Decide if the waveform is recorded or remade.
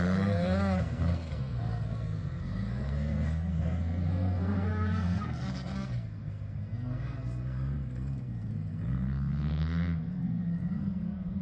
remade